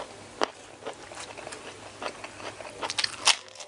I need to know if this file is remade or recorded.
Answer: recorded